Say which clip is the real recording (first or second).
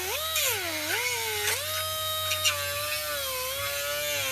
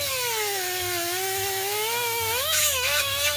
first